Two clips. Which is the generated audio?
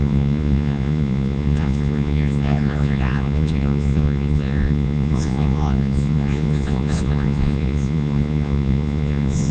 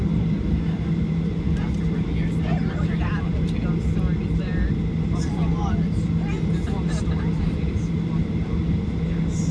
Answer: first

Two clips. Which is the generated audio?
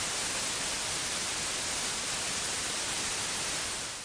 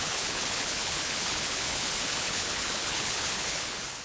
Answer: second